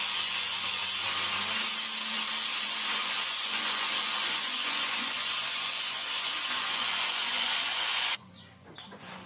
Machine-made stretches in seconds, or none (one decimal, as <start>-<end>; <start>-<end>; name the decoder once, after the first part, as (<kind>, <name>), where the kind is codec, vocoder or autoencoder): 0.0-0.8 (vocoder, Vocos); 2.6-9.3